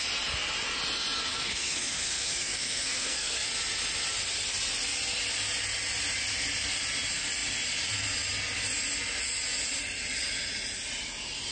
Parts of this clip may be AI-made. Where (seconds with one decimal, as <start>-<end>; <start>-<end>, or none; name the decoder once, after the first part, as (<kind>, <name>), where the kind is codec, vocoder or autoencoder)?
1.3-3.5 (codec, SNAC)